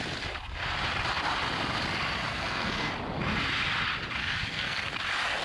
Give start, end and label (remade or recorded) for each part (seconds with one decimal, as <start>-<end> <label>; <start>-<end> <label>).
0.0-2.3 recorded; 2.3-2.9 remade; 2.9-4.2 recorded; 4.2-4.9 remade; 4.9-5.4 recorded